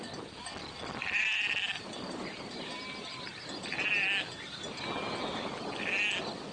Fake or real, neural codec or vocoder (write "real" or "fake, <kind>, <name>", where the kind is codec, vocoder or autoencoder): real